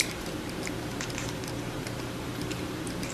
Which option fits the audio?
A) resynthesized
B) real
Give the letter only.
A